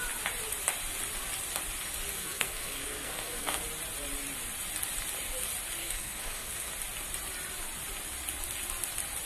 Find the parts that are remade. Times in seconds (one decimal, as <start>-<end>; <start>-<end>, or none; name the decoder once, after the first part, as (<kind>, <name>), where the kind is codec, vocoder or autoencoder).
2.1-3.6 (codec, SNAC); 5.8-6.7